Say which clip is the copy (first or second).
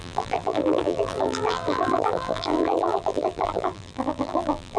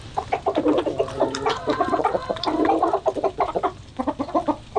first